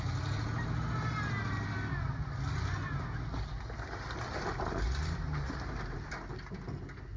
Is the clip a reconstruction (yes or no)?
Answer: no